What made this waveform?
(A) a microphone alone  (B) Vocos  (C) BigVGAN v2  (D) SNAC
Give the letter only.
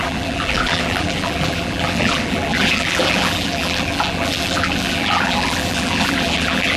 C